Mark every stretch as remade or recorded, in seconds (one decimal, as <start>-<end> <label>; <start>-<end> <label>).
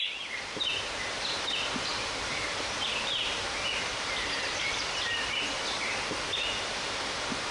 0.0-3.2 remade; 3.2-6.7 recorded; 6.7-7.5 remade